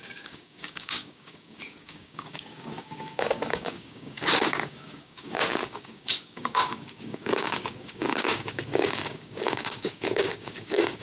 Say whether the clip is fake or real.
fake